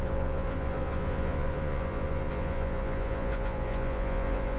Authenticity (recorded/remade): remade